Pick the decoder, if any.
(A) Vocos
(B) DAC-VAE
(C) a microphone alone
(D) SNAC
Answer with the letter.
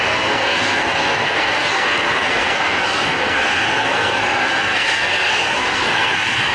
D